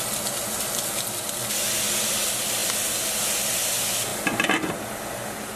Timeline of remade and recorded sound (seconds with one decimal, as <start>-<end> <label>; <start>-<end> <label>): 0.0-4.1 recorded; 4.1-4.8 remade; 4.8-5.6 recorded